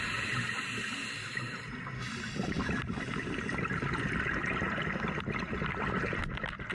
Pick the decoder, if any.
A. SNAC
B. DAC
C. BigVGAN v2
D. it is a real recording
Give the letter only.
D